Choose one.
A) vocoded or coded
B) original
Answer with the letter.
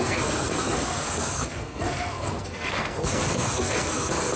A